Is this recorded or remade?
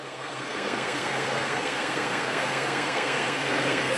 remade